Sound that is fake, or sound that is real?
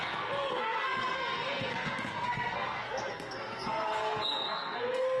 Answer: fake